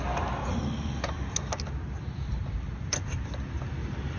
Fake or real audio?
real